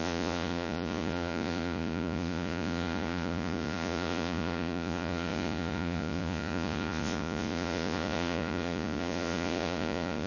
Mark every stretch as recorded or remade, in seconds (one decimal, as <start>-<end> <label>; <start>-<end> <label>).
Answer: 0.0-10.3 remade